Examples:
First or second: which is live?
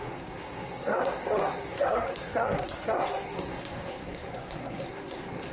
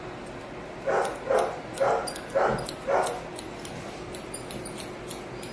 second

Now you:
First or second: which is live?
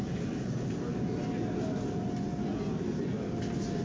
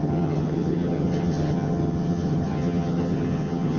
first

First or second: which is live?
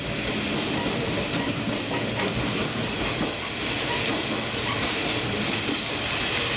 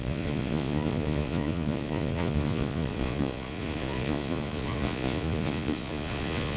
first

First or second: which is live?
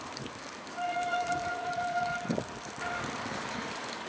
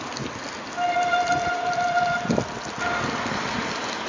second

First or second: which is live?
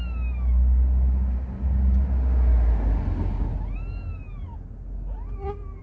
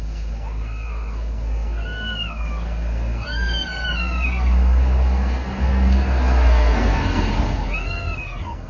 first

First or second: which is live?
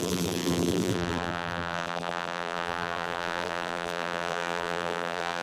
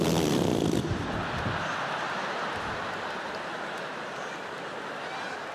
second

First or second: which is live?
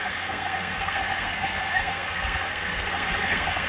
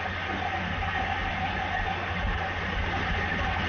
second